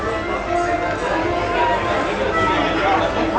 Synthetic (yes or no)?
no